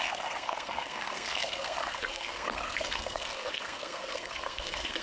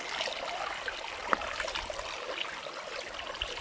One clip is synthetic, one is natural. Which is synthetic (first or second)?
first